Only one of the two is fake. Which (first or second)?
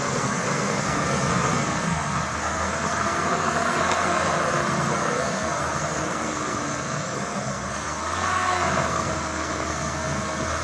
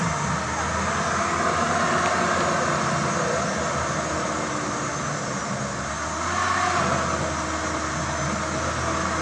first